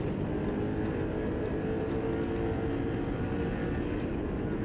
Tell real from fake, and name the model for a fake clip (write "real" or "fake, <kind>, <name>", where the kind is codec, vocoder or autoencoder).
real